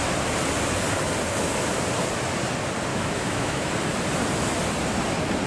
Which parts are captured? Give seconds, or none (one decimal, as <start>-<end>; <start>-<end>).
0.0-2.9; 3.7-5.5